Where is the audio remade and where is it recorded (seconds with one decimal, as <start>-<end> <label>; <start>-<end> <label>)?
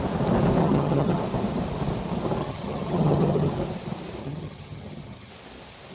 0.0-0.6 recorded; 0.6-1.2 remade; 1.2-2.4 recorded; 2.4-3.5 remade; 3.5-4.2 recorded; 4.2-5.3 remade; 5.3-5.9 recorded